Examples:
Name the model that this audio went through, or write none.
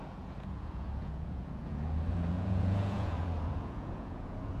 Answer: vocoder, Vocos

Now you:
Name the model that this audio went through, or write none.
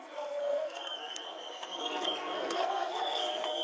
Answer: codec, SNAC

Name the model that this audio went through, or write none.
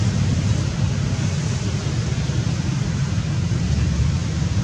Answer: none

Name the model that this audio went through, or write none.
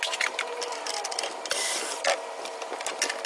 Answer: none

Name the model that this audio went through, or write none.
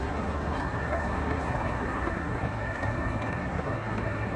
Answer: codec, SNAC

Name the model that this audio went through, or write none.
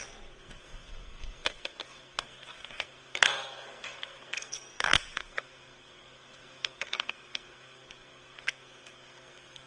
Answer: codec, SNAC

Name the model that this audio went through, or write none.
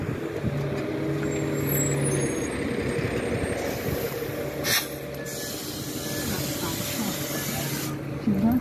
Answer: none